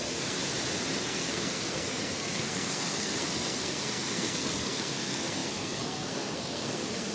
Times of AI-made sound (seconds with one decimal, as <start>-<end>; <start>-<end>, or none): 0.0-0.4; 1.0-7.1